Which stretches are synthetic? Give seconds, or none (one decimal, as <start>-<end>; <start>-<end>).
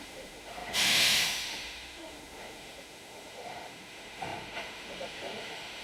0.0-5.8